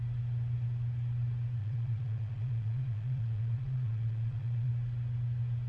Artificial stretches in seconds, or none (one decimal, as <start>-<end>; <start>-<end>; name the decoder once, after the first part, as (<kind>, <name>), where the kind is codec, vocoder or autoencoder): 1.6-4.7 (vocoder, Vocos)